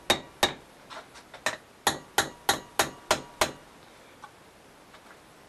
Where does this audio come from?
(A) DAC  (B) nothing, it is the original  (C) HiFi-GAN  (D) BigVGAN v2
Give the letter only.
B